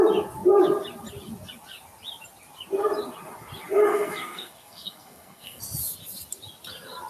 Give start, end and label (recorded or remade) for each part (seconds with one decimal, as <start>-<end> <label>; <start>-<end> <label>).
0.0-3.9 recorded; 3.9-5.6 remade; 5.6-7.1 recorded